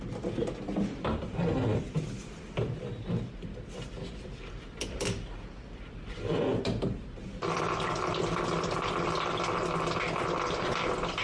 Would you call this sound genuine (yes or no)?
yes